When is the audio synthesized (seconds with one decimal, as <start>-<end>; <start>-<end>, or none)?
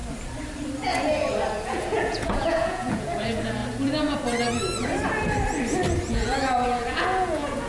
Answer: 1.6-3.6; 6.1-7.7